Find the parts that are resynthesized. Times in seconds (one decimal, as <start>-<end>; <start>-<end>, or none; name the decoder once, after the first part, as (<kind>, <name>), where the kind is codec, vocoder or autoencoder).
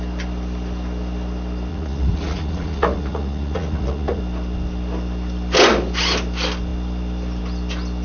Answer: 1.7-4.2 (vocoder, Vocos)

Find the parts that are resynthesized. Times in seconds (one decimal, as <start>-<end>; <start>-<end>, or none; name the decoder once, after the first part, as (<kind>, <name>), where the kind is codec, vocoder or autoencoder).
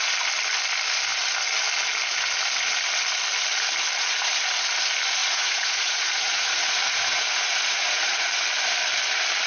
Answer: 5.2-8.3 (vocoder, Vocos)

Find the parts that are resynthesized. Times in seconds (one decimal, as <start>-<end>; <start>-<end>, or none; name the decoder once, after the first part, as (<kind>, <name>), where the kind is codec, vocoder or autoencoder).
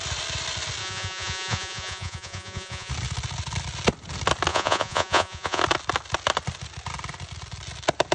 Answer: 0.8-2.9 (vocoder, Vocos); 4.5-5.6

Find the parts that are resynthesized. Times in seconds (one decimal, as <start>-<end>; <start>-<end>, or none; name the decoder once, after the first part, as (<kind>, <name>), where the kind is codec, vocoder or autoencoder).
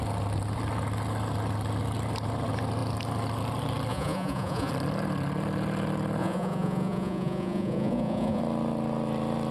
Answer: 3.9-4.7 (vocoder, Vocos); 6.2-8.4